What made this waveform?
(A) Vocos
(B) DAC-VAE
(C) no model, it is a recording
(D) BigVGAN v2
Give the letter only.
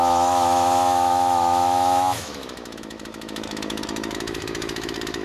B